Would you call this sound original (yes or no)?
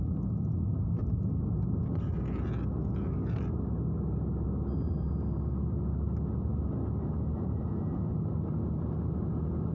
yes